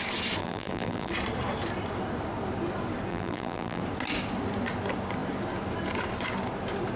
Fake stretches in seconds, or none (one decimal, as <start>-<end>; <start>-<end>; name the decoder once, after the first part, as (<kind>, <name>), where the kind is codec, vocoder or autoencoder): 0.4-1.1 (vocoder, BigVGAN v2); 3.1-3.8